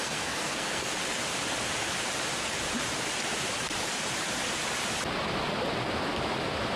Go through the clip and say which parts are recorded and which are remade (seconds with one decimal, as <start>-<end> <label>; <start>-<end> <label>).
0.0-0.9 remade; 0.9-6.8 recorded